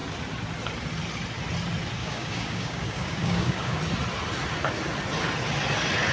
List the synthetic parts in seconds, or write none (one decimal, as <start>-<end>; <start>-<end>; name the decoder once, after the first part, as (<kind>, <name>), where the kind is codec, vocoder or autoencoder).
2.0-3.8 (codec, DAC)